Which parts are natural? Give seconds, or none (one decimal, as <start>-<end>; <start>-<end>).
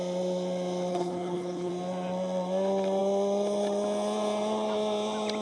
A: 0.0-0.9; 1.7-5.4